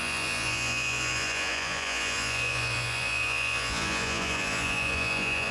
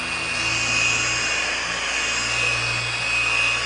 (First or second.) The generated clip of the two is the first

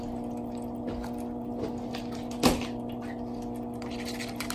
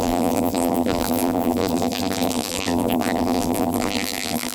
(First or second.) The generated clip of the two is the second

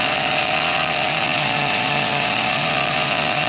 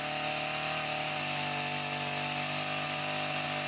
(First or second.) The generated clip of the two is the first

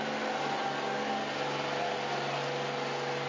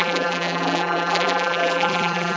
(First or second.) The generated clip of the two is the second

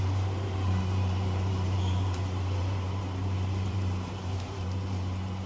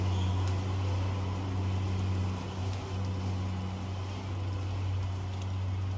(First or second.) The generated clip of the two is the first